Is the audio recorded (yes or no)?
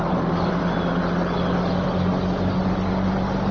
yes